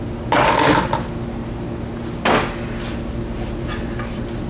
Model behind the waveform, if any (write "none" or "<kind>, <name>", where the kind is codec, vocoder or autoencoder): none